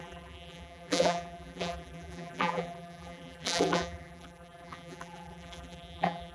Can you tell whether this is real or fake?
fake